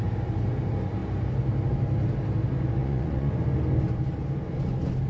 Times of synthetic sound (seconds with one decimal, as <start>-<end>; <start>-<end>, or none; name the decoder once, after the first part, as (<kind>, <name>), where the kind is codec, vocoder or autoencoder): 2.8-3.3 (vocoder, Vocos)